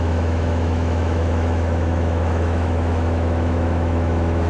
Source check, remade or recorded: remade